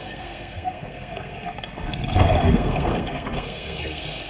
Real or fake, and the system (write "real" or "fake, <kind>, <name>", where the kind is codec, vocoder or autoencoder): fake, codec, SNAC